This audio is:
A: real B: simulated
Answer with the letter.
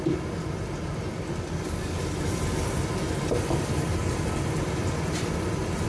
A